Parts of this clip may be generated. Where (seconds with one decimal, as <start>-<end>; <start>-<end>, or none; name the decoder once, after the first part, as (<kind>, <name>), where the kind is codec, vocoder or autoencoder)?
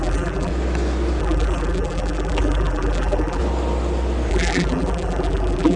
0.0-0.5 (vocoder, BigVGAN v2); 1.2-3.4; 4.3-5.8